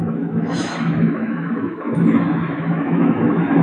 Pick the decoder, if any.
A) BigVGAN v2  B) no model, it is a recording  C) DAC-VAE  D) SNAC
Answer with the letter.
C